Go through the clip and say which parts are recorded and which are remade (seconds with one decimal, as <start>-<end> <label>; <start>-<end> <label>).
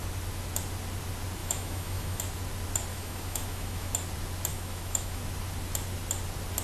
0.0-1.4 recorded; 1.4-2.2 remade; 2.2-2.9 recorded; 2.9-3.9 remade; 3.9-4.5 recorded; 4.5-5.2 remade; 5.2-6.6 recorded